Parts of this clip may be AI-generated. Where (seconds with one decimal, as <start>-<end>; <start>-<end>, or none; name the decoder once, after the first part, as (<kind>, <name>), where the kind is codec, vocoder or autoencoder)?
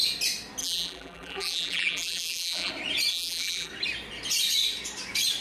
0.6-2.7 (vocoder, BigVGAN v2); 3.1-3.7